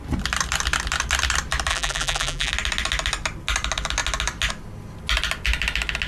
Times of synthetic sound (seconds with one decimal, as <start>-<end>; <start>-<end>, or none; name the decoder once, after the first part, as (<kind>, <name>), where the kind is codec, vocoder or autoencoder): 1.7-2.5 (vocoder, BigVGAN v2)